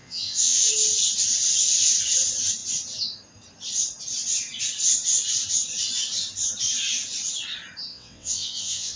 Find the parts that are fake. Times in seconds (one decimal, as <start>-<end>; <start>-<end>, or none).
0.0-0.7; 7.9-9.0